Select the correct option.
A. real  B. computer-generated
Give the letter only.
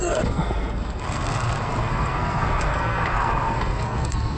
B